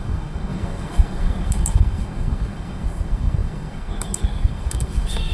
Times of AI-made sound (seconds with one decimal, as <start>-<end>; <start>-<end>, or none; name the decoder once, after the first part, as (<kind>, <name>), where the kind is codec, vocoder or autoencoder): 0.0-5.3 (codec, SNAC)